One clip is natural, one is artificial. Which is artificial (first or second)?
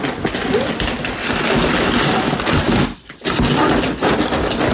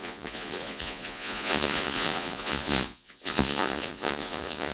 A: second